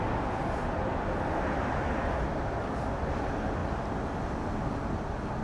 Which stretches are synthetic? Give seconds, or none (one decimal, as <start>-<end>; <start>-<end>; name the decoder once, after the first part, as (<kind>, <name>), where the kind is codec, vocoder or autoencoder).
none